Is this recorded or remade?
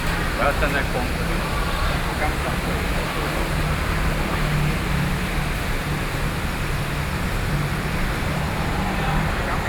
recorded